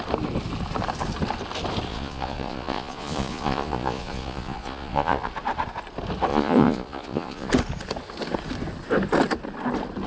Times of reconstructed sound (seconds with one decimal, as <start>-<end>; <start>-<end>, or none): 1.9-5.3; 6.3-7.5